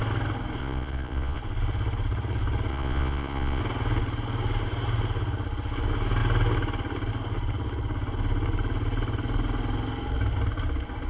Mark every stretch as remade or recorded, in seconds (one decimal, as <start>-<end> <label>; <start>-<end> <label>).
0.0-0.6 recorded; 0.6-1.4 remade; 1.4-2.7 recorded; 2.7-3.6 remade; 3.6-11.1 recorded